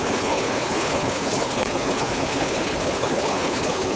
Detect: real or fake fake